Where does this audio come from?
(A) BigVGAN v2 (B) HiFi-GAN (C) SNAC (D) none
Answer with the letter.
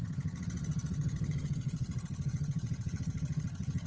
B